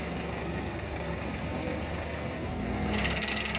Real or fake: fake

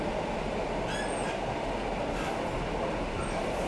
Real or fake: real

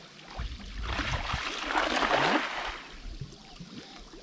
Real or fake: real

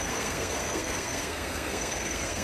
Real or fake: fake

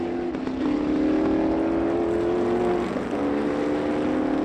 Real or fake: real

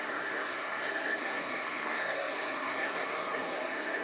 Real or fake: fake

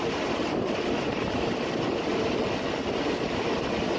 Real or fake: real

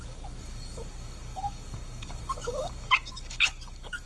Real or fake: fake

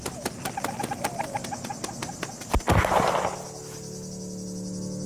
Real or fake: real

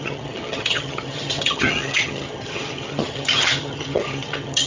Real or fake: fake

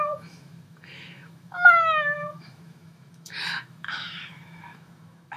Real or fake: fake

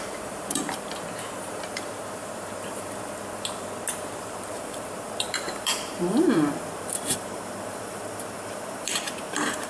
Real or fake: fake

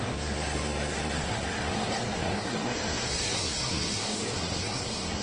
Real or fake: fake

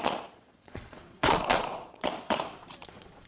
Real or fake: fake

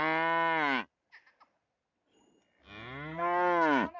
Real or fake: real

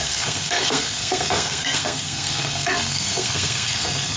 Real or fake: fake